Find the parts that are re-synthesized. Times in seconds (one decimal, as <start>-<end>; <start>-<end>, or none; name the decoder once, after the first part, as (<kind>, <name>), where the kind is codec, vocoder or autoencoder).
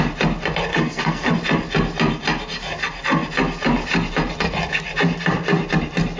0.7-1.3 (codec, SNAC)